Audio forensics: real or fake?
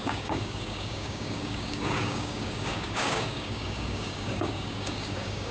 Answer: fake